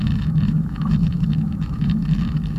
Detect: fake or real fake